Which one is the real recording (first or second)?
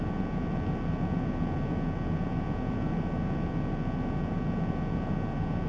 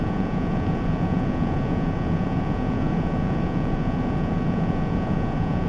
first